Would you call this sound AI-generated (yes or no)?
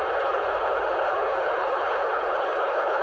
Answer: yes